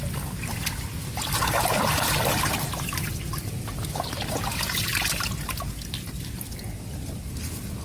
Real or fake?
real